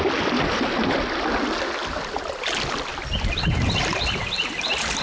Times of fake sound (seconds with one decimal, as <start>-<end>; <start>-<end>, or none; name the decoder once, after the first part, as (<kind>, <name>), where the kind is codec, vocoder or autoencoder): none